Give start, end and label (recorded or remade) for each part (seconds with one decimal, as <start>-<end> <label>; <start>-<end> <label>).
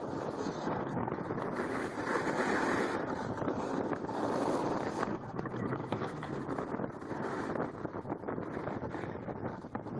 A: 0.0-0.4 recorded; 0.4-1.1 remade; 1.1-5.1 recorded; 5.1-6.4 remade; 6.4-10.0 recorded